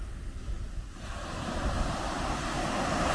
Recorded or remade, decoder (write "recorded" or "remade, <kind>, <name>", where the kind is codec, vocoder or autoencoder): recorded